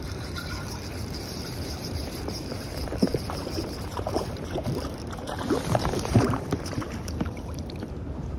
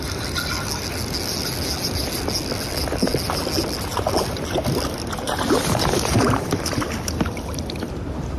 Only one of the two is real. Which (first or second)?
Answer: second